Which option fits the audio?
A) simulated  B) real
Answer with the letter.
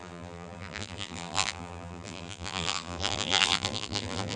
A